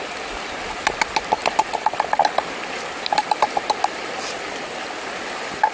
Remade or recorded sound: recorded